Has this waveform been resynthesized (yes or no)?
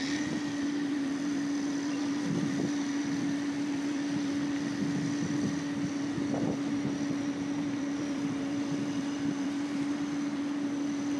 yes